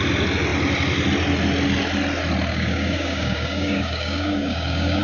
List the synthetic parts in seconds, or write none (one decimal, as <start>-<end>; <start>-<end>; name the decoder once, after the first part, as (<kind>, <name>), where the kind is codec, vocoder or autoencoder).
2.5-5.0 (codec, DAC)